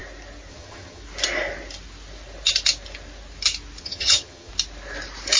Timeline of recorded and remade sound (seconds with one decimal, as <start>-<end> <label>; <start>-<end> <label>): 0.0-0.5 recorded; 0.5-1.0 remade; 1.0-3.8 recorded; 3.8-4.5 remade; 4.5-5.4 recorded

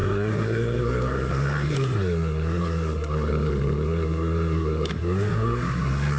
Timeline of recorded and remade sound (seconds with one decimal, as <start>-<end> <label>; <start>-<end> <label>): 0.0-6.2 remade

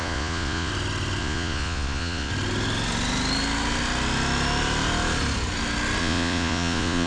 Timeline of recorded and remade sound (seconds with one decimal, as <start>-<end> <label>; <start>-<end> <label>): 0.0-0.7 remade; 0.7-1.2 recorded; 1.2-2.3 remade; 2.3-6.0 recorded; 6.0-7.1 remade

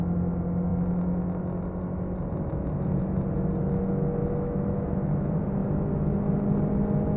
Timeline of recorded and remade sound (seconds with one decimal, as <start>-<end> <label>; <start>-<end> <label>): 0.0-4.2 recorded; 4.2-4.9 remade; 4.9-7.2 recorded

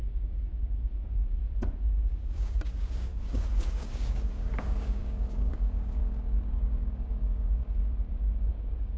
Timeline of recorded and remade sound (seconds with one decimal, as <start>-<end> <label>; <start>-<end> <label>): 0.0-1.4 remade; 1.4-2.2 recorded; 2.2-9.0 remade

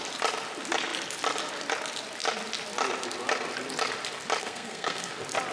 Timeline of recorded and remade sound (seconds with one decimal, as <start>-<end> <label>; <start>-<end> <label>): 0.0-4.4 recorded; 4.4-5.1 remade; 5.1-5.5 recorded

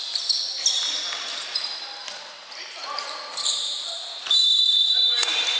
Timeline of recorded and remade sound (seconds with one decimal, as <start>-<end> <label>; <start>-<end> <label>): 0.0-1.3 recorded; 1.3-4.7 remade; 4.7-5.6 recorded